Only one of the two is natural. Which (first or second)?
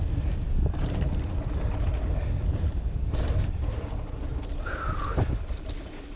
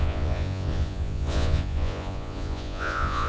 first